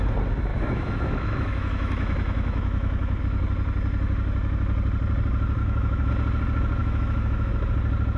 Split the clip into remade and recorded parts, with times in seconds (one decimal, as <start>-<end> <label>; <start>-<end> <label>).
0.0-0.5 recorded; 0.5-3.2 remade; 3.2-5.6 recorded; 5.6-6.1 remade; 6.1-6.8 recorded; 6.8-7.5 remade; 7.5-8.2 recorded